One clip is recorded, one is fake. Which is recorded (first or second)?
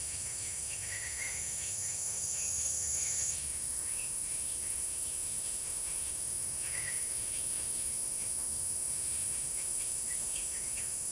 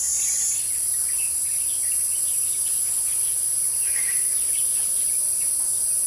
second